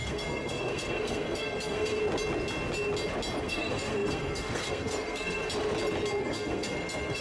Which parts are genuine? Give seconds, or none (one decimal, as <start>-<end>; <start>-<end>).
2.0-3.4; 5.4-6.2